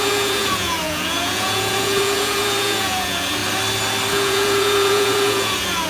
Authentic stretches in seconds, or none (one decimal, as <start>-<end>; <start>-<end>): 3.4-4.1